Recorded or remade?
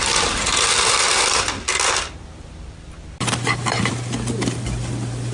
remade